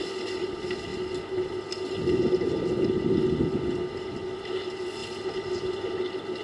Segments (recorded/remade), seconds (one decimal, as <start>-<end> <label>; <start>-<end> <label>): 0.0-6.4 recorded